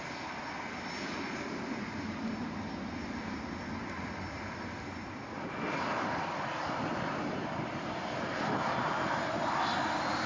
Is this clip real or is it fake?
real